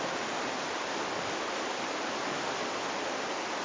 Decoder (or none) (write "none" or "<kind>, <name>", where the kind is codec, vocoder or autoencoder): none